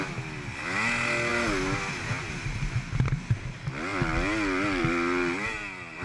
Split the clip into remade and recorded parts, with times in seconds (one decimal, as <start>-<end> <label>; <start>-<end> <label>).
0.0-6.0 recorded